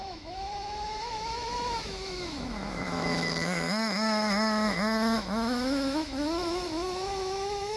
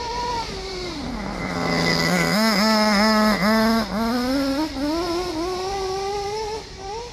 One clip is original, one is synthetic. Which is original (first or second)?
second